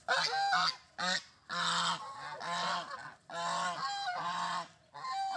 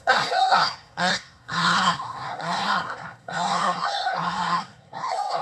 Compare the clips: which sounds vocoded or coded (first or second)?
second